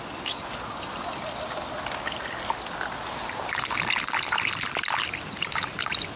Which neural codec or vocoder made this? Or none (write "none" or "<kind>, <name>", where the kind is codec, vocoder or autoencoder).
none